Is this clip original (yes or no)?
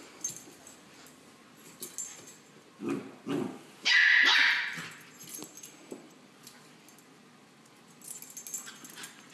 yes